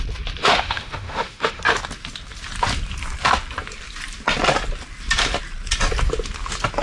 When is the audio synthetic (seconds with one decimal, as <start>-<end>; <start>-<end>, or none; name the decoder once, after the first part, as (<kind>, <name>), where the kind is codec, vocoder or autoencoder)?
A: 0.4-1.6 (autoencoder, DAC-VAE)